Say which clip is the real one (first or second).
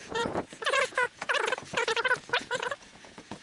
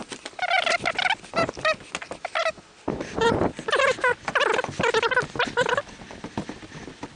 second